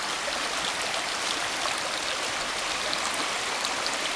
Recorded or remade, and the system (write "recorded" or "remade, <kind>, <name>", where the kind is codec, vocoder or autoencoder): recorded